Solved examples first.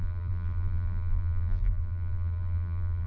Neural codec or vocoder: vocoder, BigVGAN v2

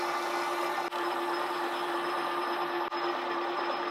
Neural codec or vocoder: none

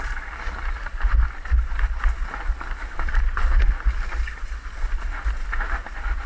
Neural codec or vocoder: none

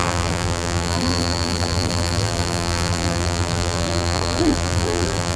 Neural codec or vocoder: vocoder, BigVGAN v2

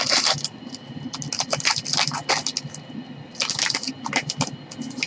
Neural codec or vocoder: none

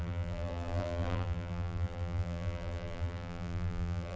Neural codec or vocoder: vocoder, BigVGAN v2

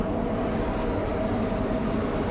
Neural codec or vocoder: none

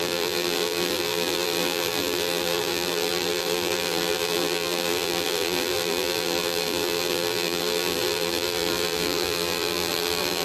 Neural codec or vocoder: vocoder, BigVGAN v2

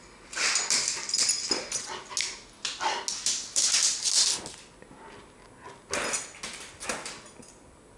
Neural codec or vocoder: none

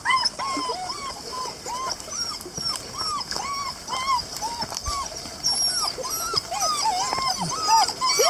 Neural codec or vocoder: none